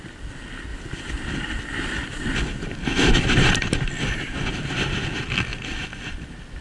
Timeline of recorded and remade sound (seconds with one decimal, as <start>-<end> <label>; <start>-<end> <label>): 0.0-6.6 recorded